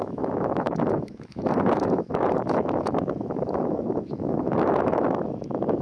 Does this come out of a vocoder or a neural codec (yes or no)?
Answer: yes